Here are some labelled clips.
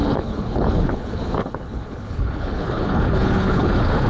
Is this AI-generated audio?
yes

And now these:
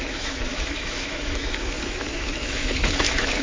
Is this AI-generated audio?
yes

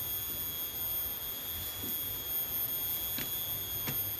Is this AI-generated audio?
no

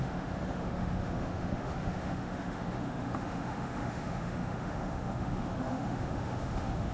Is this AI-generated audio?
yes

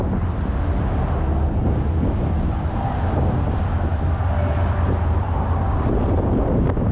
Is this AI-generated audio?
no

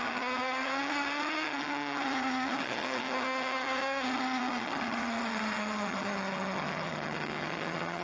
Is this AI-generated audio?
yes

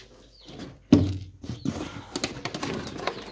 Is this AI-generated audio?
no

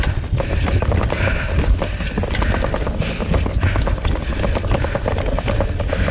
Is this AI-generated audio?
no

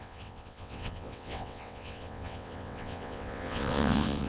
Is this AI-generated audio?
yes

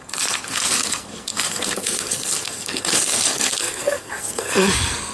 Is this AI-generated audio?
yes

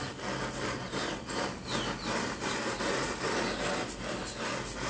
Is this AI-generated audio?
no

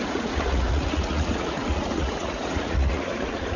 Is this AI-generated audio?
yes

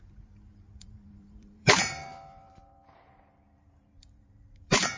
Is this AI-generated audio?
yes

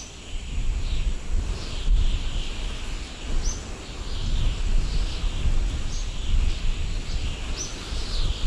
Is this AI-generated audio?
no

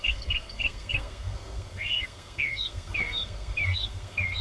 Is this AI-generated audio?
yes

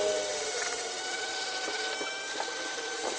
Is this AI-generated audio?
no